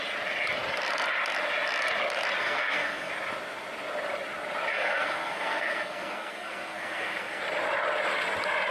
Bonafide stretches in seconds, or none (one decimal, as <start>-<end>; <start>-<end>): 0.0-2.4; 3.1-4.7; 7.4-8.7